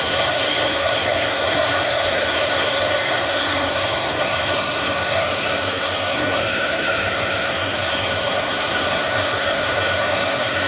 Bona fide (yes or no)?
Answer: no